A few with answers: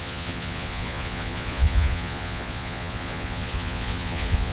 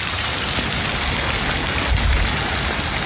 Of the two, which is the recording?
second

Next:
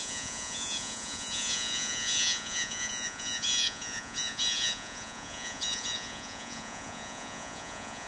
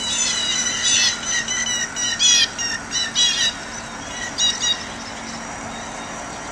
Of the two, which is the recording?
second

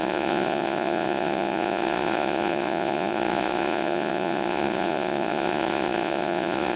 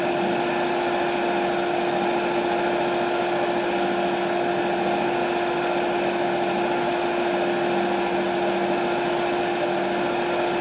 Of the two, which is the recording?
second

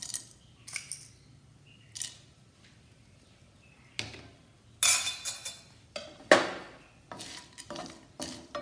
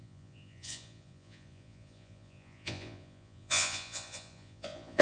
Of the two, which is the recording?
first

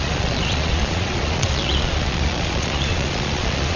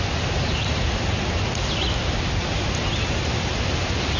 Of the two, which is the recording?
second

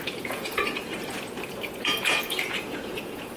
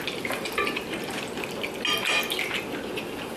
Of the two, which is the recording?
second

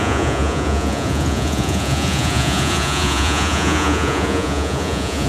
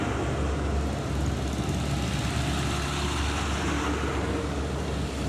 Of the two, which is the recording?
second